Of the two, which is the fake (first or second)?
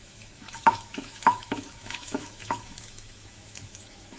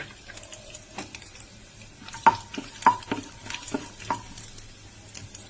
first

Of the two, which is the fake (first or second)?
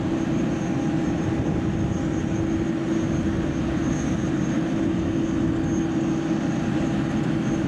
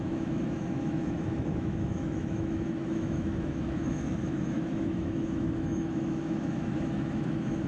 second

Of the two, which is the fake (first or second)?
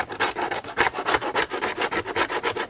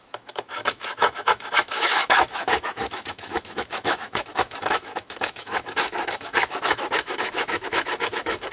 second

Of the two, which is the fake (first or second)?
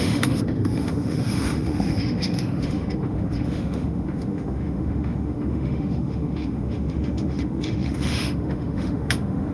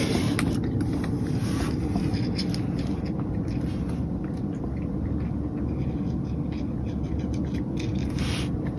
first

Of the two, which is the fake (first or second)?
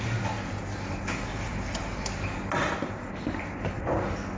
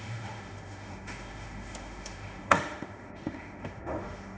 second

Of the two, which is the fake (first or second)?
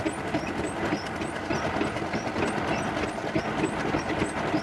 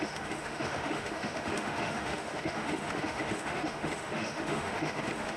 second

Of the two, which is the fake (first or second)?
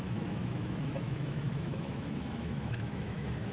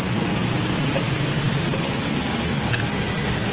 first